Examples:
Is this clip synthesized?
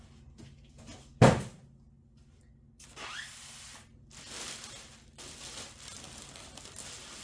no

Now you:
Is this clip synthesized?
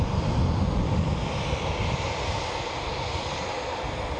no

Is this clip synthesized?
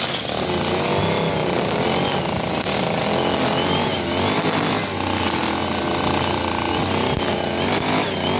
no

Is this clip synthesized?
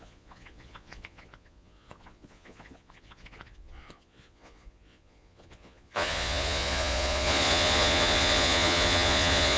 yes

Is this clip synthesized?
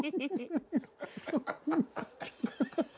yes